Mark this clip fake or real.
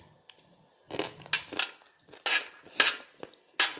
real